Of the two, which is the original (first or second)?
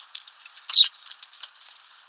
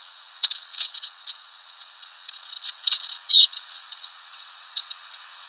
first